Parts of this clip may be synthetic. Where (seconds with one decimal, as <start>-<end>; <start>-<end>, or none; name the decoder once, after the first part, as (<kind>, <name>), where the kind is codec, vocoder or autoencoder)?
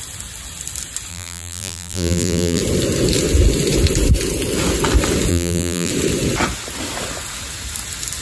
1.1-2.6 (vocoder, BigVGAN v2); 5.3-5.9